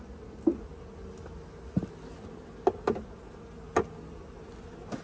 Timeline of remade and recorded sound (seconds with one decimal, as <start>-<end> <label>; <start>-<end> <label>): 0.0-5.0 recorded